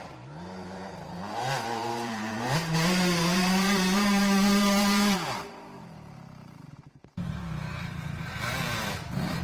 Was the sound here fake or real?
fake